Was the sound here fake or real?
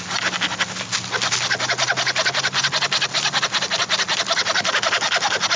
real